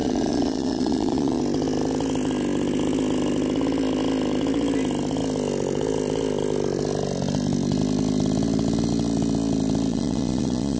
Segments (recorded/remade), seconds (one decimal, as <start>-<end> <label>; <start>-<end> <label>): 0.0-1.4 remade; 1.4-9.9 recorded; 9.9-10.8 remade